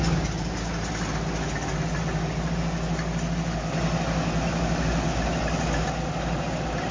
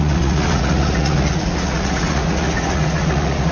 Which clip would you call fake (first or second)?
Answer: second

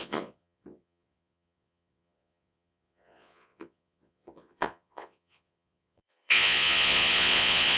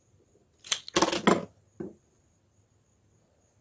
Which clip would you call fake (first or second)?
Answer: first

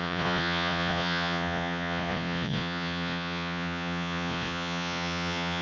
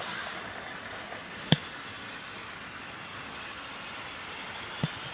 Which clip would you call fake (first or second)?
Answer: first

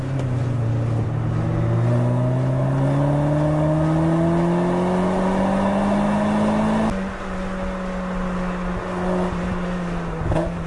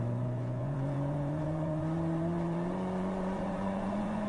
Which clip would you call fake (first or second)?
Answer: second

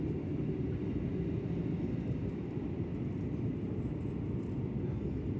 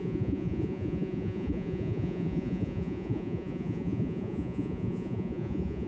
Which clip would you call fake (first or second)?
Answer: second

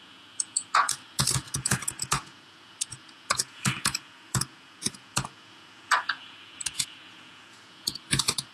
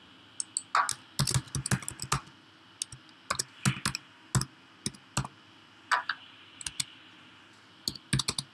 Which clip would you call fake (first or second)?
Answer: first